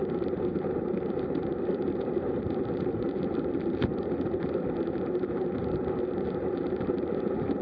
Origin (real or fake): fake